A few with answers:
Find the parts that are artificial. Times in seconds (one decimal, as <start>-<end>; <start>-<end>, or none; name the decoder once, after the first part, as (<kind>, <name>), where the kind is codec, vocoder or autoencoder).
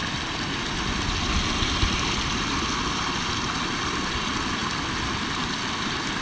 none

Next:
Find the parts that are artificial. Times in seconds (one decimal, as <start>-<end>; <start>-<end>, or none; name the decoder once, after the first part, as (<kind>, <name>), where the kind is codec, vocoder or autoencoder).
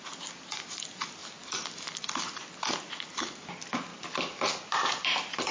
none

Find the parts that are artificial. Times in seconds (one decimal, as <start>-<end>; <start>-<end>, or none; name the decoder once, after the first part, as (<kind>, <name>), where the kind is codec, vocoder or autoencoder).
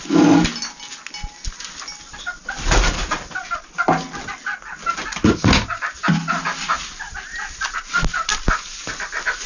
none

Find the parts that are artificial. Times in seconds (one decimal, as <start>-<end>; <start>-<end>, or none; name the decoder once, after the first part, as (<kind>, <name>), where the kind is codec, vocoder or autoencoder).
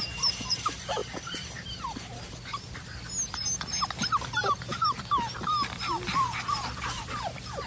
none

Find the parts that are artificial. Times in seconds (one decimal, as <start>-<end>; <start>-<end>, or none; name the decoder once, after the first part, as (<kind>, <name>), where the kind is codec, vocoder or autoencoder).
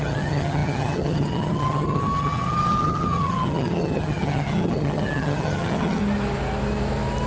0.0-6.0 (vocoder, HiFi-GAN)